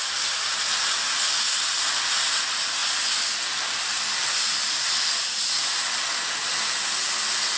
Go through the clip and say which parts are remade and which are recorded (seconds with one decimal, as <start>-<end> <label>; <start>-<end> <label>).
0.0-7.6 recorded